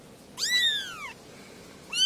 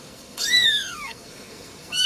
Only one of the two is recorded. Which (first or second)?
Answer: first